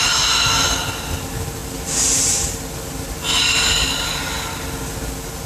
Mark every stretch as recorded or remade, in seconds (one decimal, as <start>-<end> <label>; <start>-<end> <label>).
0.0-5.5 recorded